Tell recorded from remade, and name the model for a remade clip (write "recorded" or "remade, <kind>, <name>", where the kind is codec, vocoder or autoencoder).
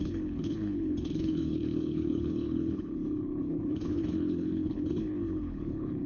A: remade, codec, HILCodec